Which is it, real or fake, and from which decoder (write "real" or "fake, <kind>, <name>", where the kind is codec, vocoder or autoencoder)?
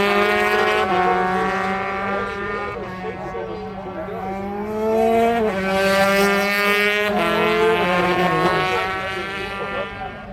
real